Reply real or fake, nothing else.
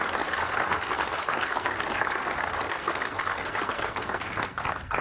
fake